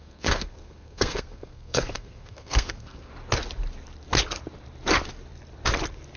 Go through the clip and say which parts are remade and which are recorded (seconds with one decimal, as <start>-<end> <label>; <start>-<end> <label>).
0.0-3.1 remade; 3.1-6.2 recorded